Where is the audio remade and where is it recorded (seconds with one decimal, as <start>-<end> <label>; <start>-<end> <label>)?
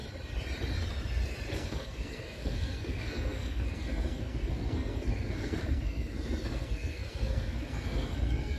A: 0.0-1.5 recorded; 1.5-8.6 remade